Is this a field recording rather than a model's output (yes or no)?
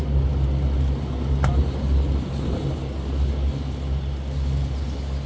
yes